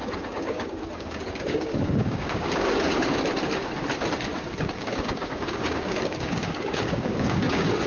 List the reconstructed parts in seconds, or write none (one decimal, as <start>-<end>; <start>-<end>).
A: 0.0-3.2; 4.3-7.9